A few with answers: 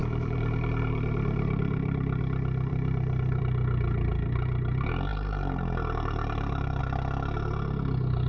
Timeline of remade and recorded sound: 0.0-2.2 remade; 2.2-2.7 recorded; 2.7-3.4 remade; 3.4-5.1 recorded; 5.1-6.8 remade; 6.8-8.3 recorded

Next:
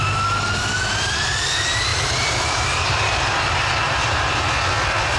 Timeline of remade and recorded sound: 0.0-1.9 recorded; 1.9-4.5 remade; 4.5-5.2 recorded

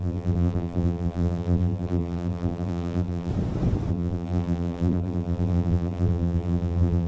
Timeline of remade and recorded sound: 0.0-3.3 remade; 3.3-3.9 recorded; 3.9-7.1 remade

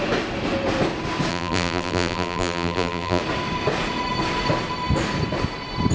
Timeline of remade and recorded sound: 0.0-1.3 recorded; 1.3-3.2 remade; 3.2-5.9 recorded

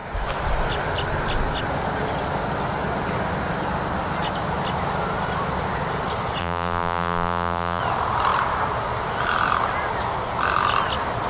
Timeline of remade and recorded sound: 0.0-6.4 recorded; 6.4-7.8 remade; 7.8-11.3 recorded

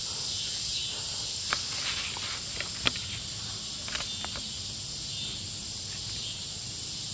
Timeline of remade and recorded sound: 0.0-0.7 recorded; 0.7-3.4 remade; 3.4-7.1 recorded